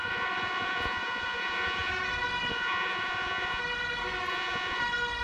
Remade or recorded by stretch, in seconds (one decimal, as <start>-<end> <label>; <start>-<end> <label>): 0.0-1.9 remade; 1.9-2.5 recorded; 2.5-3.6 remade; 3.6-4.3 recorded; 4.3-4.8 remade; 4.8-5.2 recorded